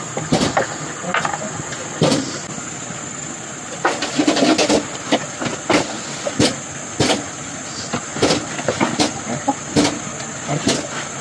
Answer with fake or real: real